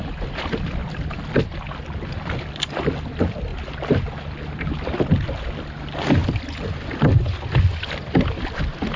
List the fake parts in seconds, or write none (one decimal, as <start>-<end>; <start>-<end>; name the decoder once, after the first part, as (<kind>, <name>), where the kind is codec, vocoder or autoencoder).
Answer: none

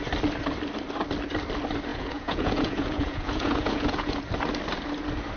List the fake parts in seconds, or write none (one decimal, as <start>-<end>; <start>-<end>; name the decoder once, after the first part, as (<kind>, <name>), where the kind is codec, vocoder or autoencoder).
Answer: 1.9-4.2 (vocoder, Vocos)

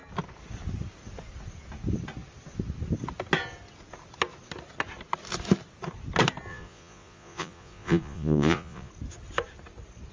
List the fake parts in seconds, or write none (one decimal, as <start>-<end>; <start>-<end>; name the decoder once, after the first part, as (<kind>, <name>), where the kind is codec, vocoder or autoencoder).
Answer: 6.5-8.9 (vocoder, Vocos)